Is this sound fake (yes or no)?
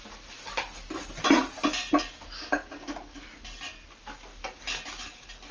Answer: no